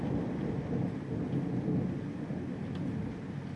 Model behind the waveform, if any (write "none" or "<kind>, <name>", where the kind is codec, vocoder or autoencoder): none